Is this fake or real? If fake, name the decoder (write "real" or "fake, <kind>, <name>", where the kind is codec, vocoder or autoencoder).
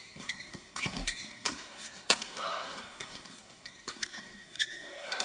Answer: fake, codec, SNAC